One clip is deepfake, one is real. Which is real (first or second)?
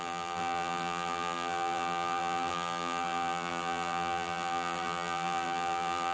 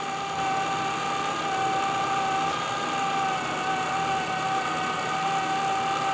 second